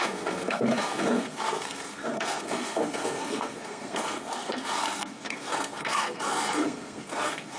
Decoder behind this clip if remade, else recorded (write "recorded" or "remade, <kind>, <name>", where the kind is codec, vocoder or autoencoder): remade, codec, SNAC